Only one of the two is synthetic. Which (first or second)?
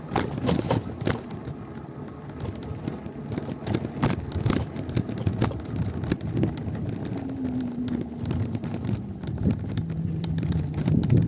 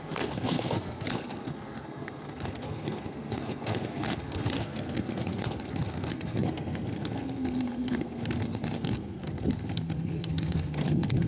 second